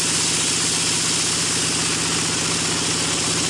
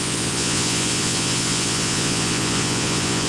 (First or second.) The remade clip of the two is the second